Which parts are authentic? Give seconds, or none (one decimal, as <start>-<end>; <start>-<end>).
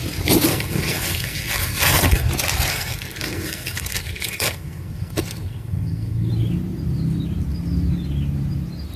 0.0-0.5; 2.3-2.7; 6.3-9.0